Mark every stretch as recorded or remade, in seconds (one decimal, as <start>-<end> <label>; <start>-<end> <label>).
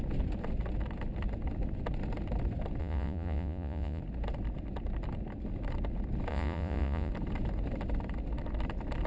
0.0-2.8 recorded; 2.8-4.0 remade; 4.0-6.3 recorded; 6.3-7.1 remade; 7.1-9.1 recorded